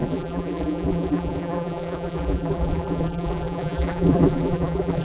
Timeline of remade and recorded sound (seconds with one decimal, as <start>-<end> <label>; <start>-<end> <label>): 0.0-5.0 remade